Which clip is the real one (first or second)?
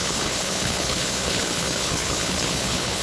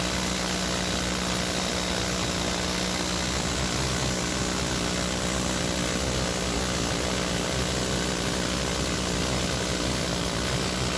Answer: second